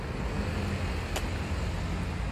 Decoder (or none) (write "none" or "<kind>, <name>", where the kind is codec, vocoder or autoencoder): none